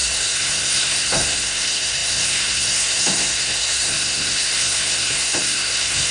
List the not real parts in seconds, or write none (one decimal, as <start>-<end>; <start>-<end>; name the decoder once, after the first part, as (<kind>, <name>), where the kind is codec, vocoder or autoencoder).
0.0-6.1 (codec, SNAC)